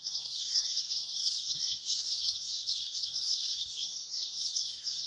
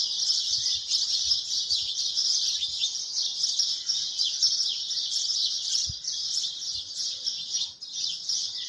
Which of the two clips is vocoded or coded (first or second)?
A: first